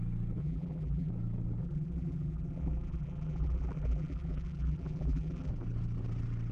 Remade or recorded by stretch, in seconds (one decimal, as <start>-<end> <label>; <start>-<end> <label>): 0.0-0.4 recorded; 0.4-1.1 remade; 1.1-1.6 recorded; 1.6-5.5 remade; 5.5-6.5 recorded